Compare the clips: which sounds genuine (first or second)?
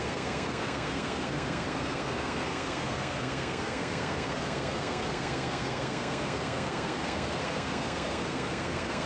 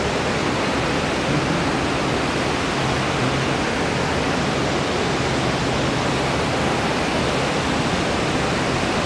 second